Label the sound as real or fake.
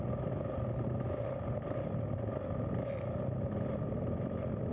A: real